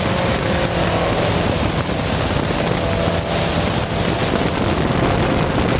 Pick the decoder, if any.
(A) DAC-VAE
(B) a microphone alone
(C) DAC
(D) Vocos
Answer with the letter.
B